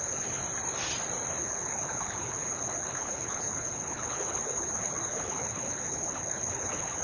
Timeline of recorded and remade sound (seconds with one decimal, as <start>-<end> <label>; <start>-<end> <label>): 0.0-0.4 remade; 0.4-1.4 recorded; 1.4-7.0 remade